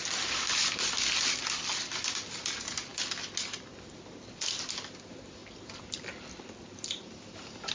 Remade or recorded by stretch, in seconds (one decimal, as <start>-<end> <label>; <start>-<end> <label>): 0.0-7.7 recorded